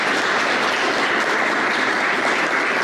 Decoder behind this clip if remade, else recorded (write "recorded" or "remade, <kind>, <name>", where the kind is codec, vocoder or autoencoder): recorded